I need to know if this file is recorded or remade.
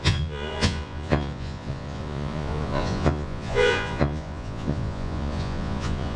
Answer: remade